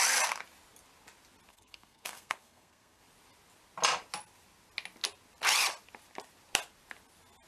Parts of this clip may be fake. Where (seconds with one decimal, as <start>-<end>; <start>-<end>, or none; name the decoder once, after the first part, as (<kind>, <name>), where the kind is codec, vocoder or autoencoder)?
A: 1.5-3.0 (codec, SNAC)